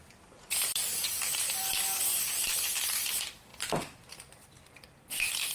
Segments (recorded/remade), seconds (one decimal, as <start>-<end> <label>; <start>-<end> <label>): 0.0-0.8 recorded; 0.8-1.7 remade; 1.7-3.5 recorded; 3.5-4.1 remade; 4.1-5.5 recorded